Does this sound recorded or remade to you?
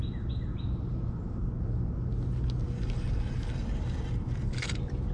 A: recorded